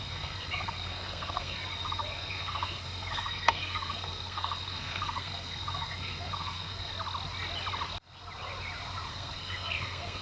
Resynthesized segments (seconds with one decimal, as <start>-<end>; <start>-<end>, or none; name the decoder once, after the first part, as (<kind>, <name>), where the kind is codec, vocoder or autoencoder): 0.0-6.9 (codec, SNAC); 9.1-10.2